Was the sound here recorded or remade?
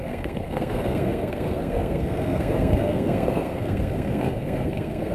remade